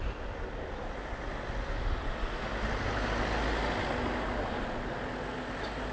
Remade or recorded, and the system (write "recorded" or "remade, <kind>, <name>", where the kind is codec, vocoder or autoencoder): recorded